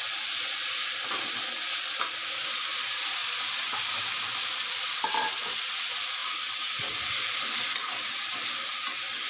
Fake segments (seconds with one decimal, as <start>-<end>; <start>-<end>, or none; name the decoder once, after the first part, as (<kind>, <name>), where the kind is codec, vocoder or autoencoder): none